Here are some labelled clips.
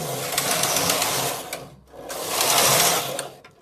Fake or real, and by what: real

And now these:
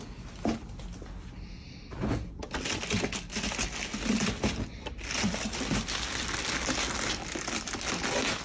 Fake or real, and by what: real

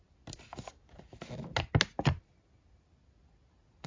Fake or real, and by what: real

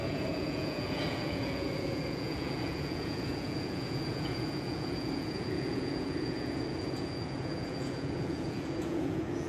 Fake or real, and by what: fake, vocoder, Vocos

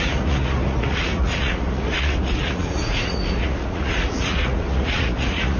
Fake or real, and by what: fake, vocoder, Vocos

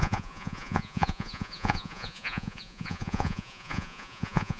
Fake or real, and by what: fake, vocoder, Vocos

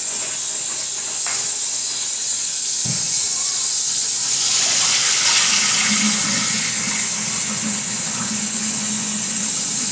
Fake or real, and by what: fake, vocoder, Vocos